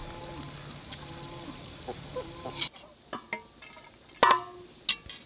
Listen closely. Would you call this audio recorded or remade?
recorded